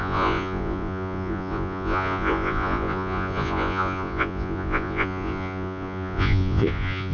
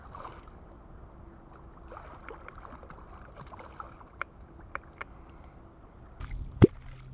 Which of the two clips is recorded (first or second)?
second